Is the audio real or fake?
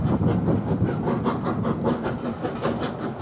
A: real